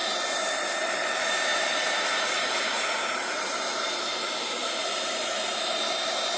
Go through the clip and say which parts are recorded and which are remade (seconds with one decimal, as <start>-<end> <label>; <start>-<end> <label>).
0.0-6.4 remade